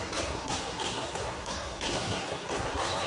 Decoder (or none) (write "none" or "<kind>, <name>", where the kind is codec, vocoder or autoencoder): codec, SNAC